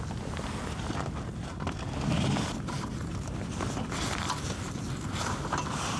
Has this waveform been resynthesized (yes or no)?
no